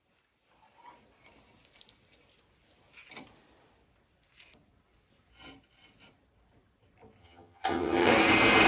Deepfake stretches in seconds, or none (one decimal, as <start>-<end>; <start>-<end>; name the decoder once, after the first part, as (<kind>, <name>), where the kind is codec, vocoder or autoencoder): 7.2-8.1 (vocoder, HiFi-GAN)

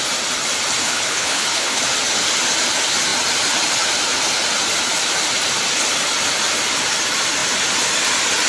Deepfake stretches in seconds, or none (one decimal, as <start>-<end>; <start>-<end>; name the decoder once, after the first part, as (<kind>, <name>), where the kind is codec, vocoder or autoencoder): 0.8-1.8 (codec, HILCodec)

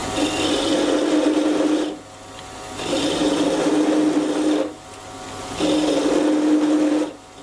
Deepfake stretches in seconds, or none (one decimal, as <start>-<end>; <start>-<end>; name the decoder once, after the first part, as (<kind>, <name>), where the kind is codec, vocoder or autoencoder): none

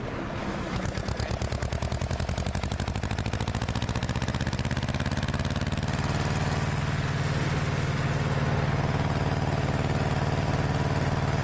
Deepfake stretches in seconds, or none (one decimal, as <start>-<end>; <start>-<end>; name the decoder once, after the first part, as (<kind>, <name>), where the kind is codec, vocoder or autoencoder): 0.4-1.0 (autoencoder, DAC-VAE)

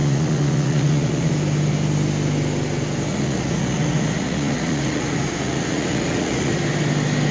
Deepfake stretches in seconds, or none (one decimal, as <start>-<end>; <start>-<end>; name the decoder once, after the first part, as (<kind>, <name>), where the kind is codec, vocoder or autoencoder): 0.0-1.3 (vocoder, Vocos); 3.1-6.5